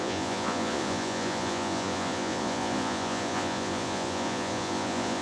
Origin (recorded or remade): remade